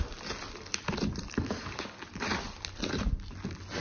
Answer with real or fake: real